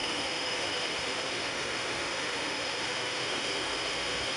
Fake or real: fake